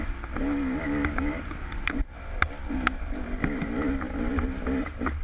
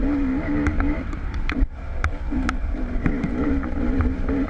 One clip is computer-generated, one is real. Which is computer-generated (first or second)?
second